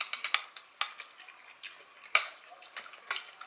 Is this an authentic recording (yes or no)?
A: yes